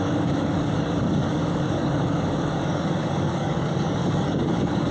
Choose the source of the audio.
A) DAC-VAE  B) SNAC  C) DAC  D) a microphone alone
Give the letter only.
C